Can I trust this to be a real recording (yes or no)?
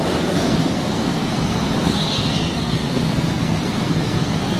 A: no